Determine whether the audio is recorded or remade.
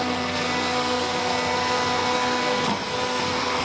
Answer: remade